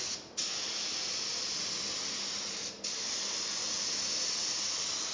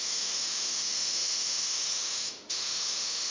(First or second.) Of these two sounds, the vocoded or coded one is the second